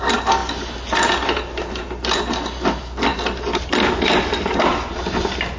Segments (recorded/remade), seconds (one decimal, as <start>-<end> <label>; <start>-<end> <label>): 0.0-5.6 recorded